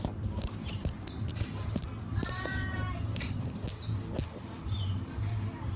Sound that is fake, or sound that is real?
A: fake